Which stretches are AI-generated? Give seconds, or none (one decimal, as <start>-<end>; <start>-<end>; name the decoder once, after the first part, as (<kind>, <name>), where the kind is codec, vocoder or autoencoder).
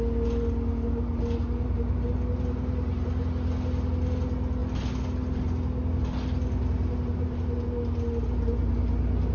none